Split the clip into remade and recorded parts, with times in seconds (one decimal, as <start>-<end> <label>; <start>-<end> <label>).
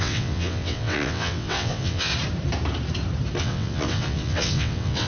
0.0-2.1 remade; 2.1-3.4 recorded; 3.4-5.1 remade